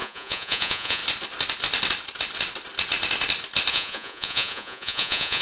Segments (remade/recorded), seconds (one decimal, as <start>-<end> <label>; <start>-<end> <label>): 0.0-1.0 remade; 1.0-3.7 recorded; 3.7-5.4 remade